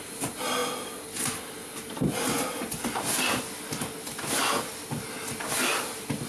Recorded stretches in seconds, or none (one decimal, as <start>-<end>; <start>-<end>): 0.0-6.3